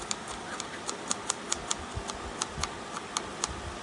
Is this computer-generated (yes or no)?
no